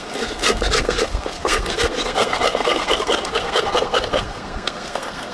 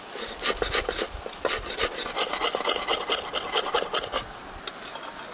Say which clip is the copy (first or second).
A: first